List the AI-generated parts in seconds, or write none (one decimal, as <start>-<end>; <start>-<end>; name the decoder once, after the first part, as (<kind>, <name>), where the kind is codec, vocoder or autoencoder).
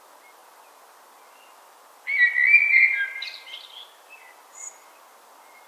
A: none